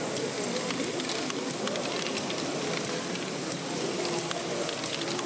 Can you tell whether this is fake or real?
real